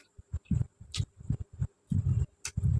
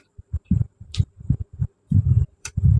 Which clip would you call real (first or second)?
first